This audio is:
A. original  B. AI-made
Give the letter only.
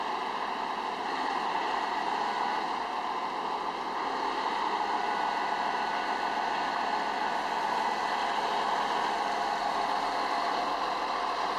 A